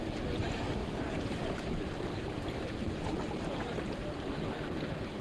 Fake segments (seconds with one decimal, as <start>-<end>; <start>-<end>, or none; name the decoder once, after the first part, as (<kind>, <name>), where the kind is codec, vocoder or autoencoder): 0.8-3.9 (vocoder, BigVGAN v2)